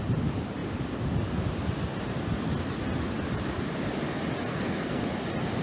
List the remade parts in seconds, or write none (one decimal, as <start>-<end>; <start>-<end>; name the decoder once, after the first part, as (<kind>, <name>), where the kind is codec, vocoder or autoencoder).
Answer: 4.5-5.0 (codec, SNAC)